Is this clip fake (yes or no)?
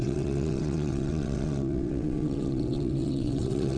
yes